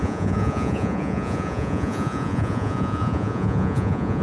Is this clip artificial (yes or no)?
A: yes